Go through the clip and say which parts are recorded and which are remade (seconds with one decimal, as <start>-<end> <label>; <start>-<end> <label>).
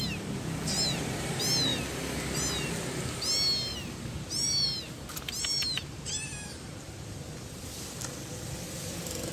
0.0-3.7 recorded; 3.7-7.3 remade; 7.3-9.3 recorded